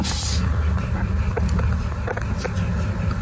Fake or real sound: real